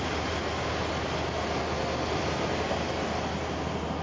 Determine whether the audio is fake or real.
real